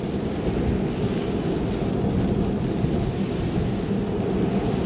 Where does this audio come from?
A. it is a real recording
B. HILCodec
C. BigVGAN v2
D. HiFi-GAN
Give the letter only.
A